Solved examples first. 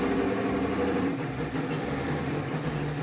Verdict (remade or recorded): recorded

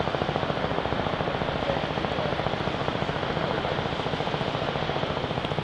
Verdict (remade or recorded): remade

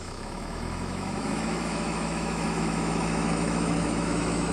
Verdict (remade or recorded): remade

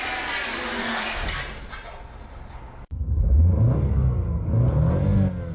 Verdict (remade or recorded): recorded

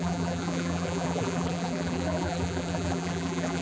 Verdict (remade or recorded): remade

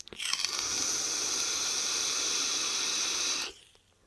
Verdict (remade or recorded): remade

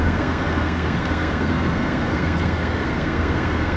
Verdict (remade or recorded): remade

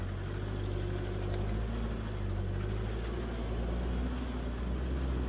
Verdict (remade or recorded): recorded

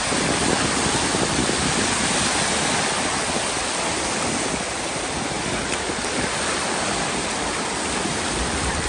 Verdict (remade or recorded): remade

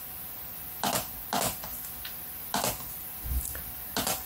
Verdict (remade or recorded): recorded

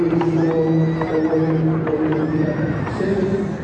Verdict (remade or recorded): recorded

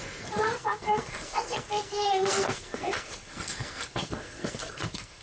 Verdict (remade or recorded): remade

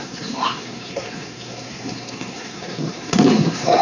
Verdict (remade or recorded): remade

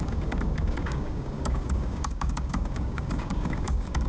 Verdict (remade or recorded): remade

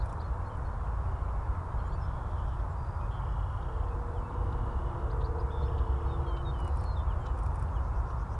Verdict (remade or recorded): recorded